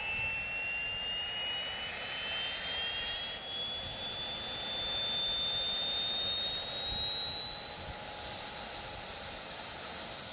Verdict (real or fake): real